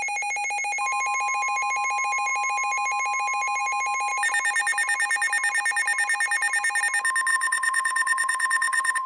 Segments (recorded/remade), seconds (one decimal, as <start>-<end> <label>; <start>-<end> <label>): 0.0-7.3 recorded; 7.3-9.1 remade